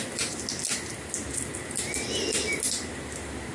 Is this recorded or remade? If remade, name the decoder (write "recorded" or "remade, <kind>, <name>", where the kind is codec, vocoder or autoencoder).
recorded